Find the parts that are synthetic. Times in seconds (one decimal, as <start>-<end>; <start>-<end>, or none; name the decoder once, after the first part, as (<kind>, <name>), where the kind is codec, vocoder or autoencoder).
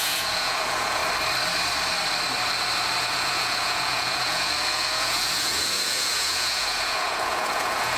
0.0-1.0 (vocoder, Vocos); 3.0-8.0